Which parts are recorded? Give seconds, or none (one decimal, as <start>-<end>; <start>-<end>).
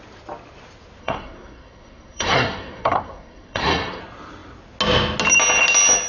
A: 0.0-1.0; 4.0-6.1